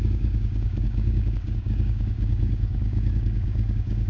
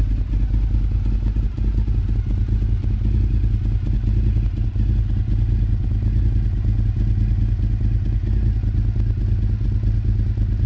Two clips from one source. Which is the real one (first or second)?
second